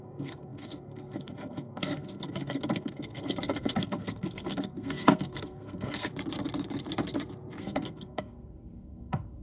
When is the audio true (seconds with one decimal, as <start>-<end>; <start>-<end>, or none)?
6.1-7.6